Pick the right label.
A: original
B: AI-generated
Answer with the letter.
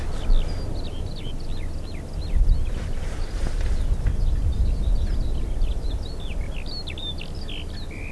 A